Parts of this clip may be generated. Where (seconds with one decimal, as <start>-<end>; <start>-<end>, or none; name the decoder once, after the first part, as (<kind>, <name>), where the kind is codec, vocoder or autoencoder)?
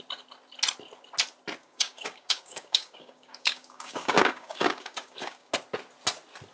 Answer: 1.6-5.5 (codec, DAC)